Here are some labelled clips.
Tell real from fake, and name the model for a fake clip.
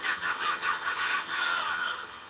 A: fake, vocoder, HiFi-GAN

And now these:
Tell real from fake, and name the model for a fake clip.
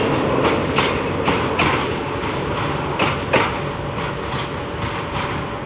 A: real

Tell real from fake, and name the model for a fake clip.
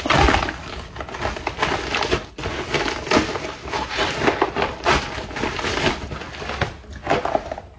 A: real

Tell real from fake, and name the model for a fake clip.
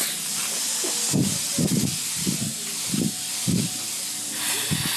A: real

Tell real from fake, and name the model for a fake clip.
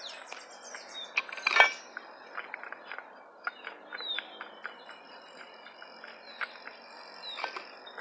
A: real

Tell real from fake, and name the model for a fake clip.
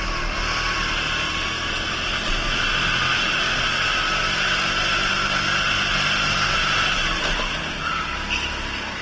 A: real